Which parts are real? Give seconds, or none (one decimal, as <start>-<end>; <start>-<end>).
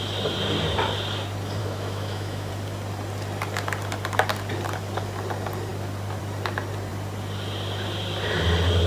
0.0-1.6; 2.5-8.9